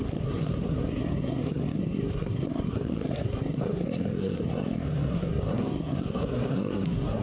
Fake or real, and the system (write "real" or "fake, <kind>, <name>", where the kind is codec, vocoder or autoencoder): fake, codec, SNAC